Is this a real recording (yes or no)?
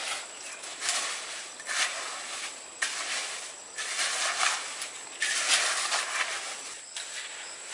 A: yes